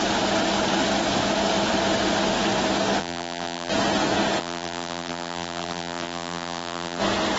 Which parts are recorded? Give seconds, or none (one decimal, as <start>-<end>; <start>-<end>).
0.0-3.0; 3.7-4.4; 7.0-7.4